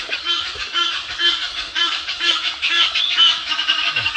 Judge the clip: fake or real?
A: fake